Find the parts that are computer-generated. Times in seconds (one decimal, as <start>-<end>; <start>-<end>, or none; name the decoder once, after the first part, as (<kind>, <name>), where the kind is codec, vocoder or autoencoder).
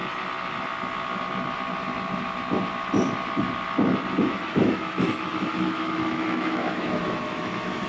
4.2-7.9 (autoencoder, DAC-VAE)